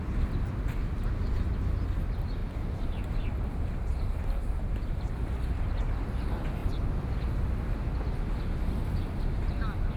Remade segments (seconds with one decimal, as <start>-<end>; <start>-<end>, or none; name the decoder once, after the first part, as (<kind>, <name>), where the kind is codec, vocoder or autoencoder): 2.4-5.1 (vocoder, BigVGAN v2)